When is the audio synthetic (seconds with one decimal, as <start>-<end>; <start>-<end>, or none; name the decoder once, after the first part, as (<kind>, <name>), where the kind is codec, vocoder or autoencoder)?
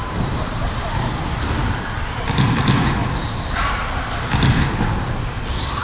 3.0-3.6 (vocoder, BigVGAN v2)